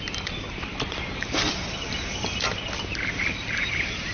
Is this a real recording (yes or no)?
no